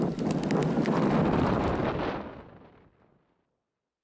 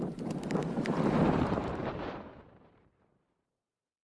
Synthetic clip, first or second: second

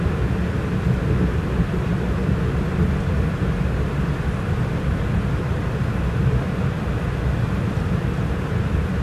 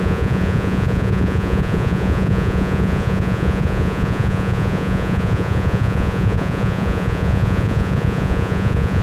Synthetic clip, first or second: second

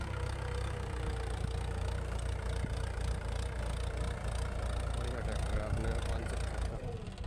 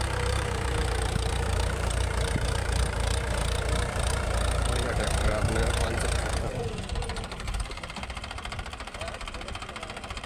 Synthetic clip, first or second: second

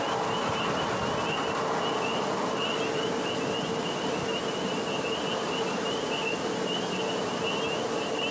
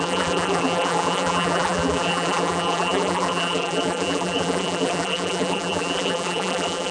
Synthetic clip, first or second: second